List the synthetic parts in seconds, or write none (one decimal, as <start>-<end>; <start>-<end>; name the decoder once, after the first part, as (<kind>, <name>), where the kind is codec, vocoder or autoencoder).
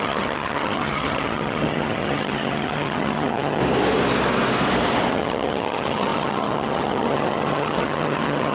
0.0-3.6 (vocoder, HiFi-GAN); 5.1-8.5